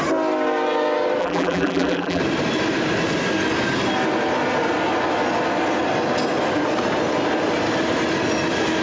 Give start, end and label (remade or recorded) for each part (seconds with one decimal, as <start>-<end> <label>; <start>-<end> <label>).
0.0-1.2 recorded; 1.2-2.2 remade; 2.2-8.8 recorded